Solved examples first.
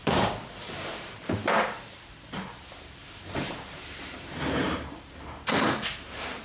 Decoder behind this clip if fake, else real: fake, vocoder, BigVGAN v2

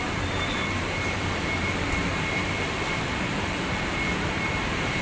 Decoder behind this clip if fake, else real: fake, vocoder, BigVGAN v2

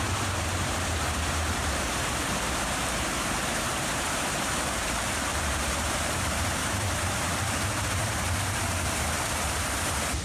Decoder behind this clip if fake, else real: fake, vocoder, BigVGAN v2